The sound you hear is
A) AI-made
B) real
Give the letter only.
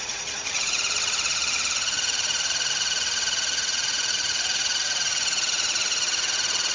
A